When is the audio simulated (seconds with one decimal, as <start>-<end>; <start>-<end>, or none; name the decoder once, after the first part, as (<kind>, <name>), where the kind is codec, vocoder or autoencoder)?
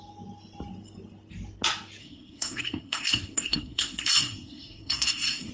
2.0-5.5 (codec, SNAC)